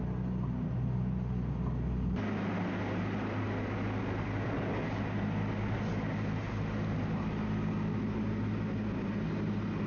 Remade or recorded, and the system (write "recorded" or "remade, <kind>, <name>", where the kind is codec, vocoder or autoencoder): recorded